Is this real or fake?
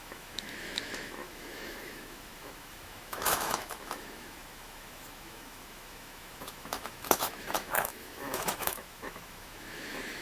fake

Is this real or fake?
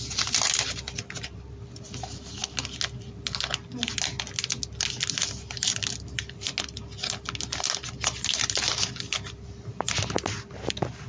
real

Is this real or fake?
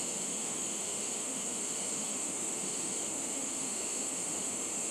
fake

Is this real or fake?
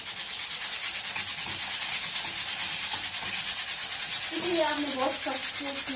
real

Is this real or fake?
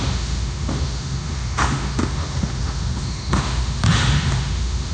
fake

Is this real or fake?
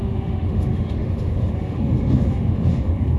fake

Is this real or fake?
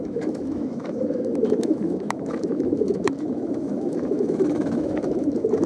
fake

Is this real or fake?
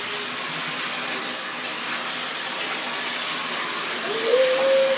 real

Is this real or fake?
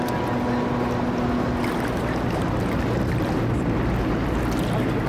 real